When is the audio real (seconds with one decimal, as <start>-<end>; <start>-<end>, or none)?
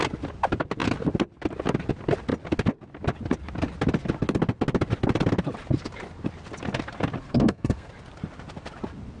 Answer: 0.0-7.2; 7.9-9.2